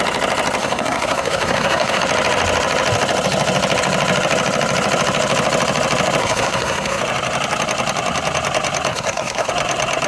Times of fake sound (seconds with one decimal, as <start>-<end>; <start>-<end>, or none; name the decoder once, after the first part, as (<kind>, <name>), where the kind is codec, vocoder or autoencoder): 0.6-2.0 (codec, SNAC); 6.2-7.0; 8.9-9.5